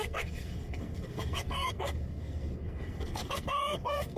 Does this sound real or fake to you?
fake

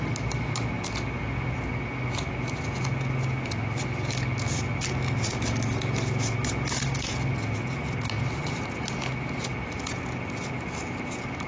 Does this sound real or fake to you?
real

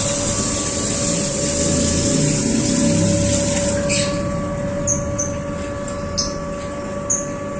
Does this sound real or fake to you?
real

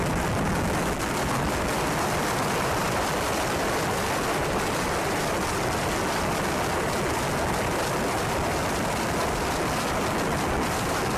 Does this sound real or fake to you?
real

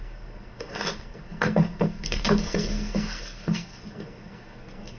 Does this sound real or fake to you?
fake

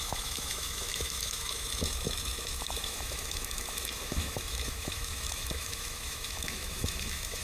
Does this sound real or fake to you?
fake